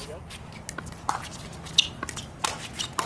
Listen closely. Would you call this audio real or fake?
real